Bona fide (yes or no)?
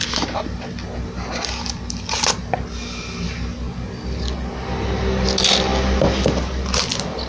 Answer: yes